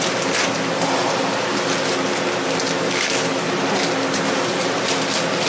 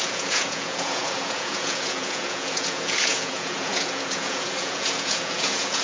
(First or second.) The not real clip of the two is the second